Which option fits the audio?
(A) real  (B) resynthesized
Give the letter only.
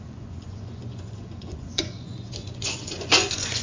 B